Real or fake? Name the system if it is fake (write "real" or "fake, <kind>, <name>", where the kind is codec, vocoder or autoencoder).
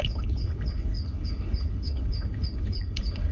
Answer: fake, codec, HILCodec